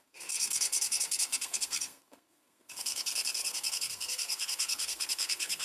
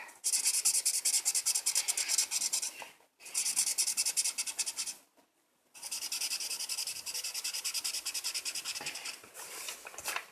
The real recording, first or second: second